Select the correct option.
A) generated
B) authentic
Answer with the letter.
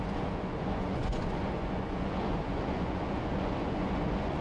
A